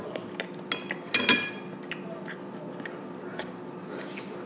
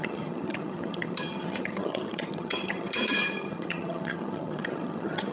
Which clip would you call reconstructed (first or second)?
second